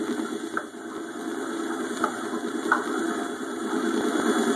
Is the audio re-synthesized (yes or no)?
no